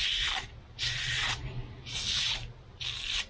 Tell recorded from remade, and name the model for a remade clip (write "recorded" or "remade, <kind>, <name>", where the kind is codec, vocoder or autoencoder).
recorded